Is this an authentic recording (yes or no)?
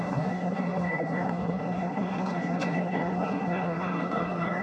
no